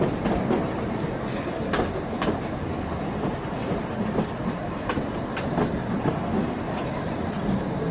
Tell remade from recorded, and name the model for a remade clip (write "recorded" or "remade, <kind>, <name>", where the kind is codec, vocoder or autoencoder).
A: recorded